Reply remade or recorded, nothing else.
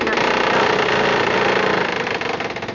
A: recorded